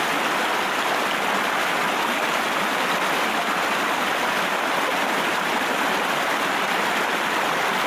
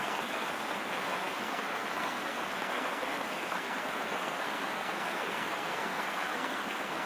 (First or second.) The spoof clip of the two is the second